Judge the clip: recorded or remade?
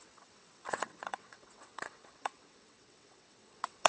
remade